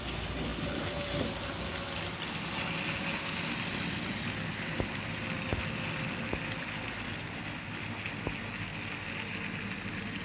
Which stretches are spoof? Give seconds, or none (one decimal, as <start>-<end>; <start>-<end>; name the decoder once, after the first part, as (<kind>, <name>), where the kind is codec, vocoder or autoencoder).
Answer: none